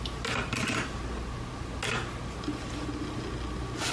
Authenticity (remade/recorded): recorded